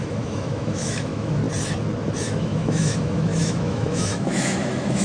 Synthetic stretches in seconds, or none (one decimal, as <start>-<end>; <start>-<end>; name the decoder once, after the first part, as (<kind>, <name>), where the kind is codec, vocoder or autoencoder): 0.0-1.4 (autoencoder, DAC-VAE); 2.2-5.0